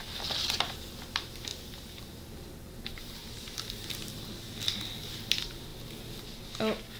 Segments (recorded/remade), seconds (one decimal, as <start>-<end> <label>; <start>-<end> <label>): 0.0-7.0 recorded